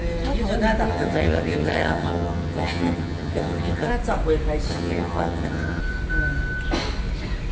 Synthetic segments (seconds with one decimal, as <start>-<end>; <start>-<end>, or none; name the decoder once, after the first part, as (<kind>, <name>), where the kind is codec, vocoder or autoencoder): 0.9-3.9 (vocoder, HiFi-GAN); 4.7-5.8